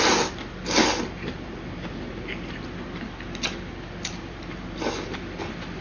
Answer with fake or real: real